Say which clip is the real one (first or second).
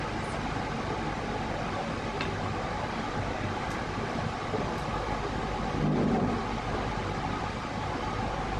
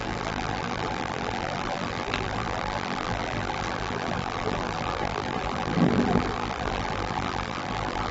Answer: first